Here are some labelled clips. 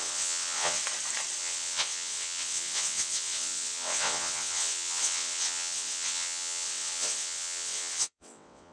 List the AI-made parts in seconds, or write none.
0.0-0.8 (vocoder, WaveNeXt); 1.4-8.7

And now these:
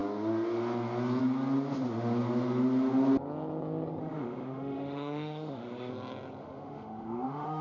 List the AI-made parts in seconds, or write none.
4.0-5.9 (autoencoder, DAC-VAE); 6.4-7.6

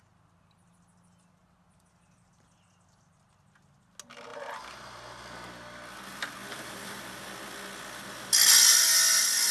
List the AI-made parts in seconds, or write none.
4.3-5.2 (vocoder, BigVGAN v2); 6.4-7.0

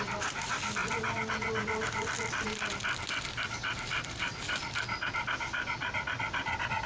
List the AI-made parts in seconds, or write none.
none

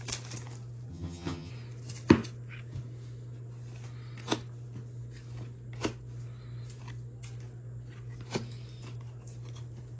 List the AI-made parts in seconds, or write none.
0.9-1.5 (vocoder, HiFi-GAN)

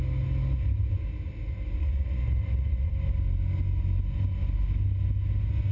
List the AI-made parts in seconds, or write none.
1.8-2.9 (vocoder, Vocos)

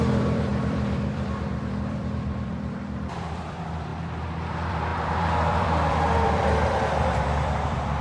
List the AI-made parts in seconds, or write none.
0.0-3.9 (vocoder, BigVGAN v2); 4.5-8.0